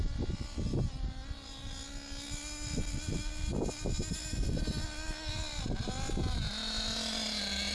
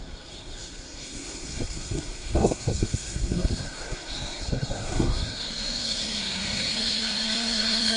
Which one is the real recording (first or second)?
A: first